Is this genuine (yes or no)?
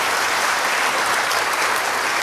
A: no